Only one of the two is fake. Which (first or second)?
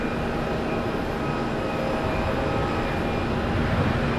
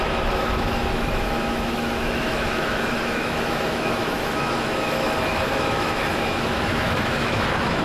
second